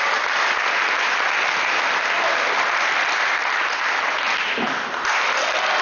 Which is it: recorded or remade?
recorded